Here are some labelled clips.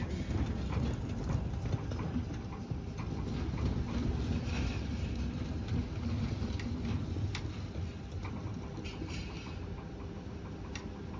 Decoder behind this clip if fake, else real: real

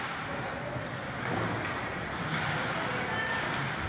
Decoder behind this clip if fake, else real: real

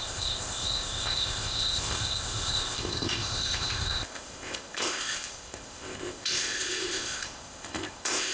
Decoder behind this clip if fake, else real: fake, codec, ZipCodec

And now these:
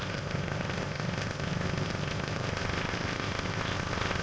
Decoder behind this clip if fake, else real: fake, codec, ZipCodec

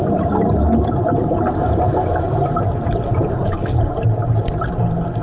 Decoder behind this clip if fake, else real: real